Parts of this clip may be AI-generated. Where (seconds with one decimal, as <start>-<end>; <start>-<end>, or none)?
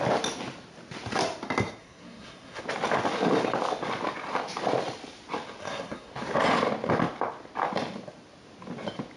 1.8-2.6; 5.6-6.1